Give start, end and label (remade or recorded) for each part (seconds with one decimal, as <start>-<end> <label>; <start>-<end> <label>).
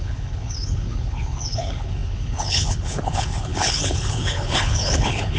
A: 0.0-5.4 remade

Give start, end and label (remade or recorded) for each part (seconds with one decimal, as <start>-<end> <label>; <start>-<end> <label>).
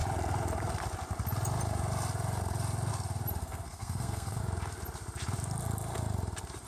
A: 0.0-3.4 recorded; 3.4-4.4 remade; 4.4-6.7 recorded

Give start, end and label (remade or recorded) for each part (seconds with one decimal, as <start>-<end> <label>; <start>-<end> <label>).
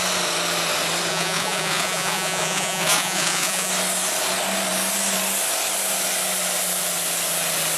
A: 0.0-1.1 recorded; 1.1-3.7 remade; 3.7-7.8 recorded